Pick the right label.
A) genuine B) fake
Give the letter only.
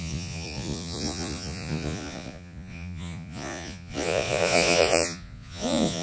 B